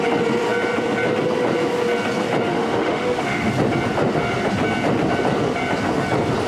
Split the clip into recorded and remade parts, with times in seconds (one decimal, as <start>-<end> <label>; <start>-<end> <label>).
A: 0.0-2.5 recorded; 2.5-3.5 remade; 3.5-6.5 recorded